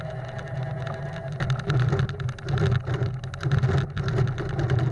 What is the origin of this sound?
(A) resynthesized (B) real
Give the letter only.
B